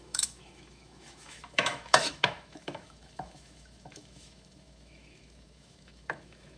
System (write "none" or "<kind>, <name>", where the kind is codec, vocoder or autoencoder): autoencoder, DAC-VAE